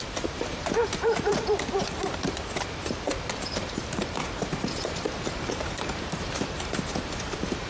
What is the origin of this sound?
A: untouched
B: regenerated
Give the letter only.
B